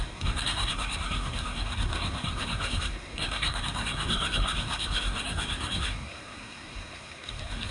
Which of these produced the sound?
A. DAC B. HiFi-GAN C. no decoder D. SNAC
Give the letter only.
D